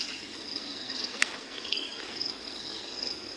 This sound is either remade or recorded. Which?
remade